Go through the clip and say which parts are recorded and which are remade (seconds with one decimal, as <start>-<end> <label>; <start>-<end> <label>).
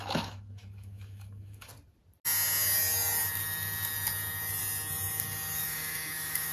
0.0-1.7 remade; 1.7-5.6 recorded; 5.6-6.5 remade